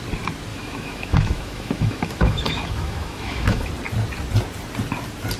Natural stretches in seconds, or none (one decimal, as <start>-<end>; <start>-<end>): 0.0-0.5; 3.7-5.4